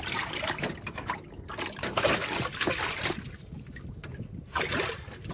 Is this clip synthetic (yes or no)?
no